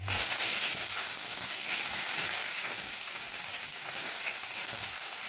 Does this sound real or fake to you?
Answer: fake